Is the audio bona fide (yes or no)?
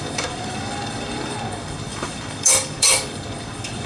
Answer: no